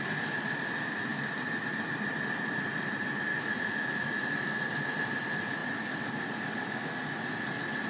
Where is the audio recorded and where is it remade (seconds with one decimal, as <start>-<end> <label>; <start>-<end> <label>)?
0.0-3.3 recorded; 3.3-4.4 remade; 4.4-7.9 recorded